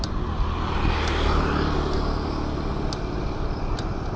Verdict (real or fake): real